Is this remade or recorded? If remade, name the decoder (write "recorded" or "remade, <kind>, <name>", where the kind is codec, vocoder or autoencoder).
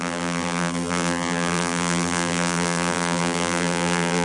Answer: remade, vocoder, BigVGAN v2